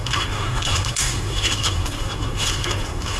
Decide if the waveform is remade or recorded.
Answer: remade